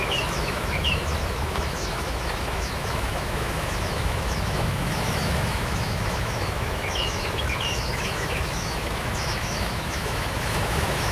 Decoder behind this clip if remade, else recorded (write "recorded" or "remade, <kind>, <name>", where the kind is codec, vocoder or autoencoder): remade, autoencoder, DAC-VAE